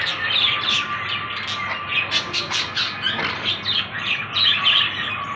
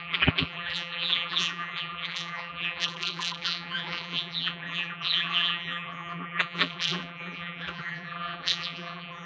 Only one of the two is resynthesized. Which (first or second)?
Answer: second